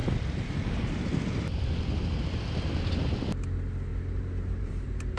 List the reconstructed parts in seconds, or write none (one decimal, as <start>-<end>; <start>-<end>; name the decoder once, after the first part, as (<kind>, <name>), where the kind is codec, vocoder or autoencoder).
none